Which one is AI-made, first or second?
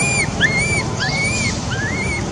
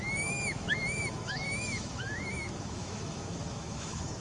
second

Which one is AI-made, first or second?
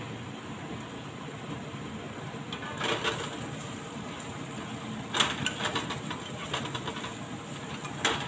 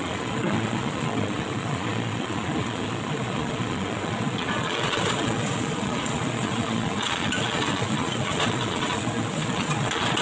second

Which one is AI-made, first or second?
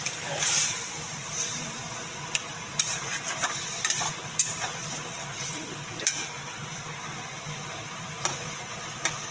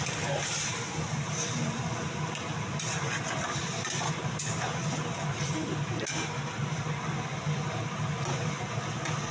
first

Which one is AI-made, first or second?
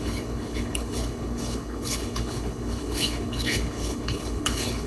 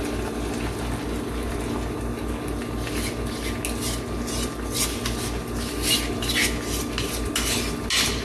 first